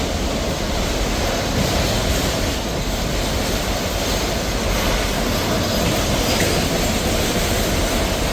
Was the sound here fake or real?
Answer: real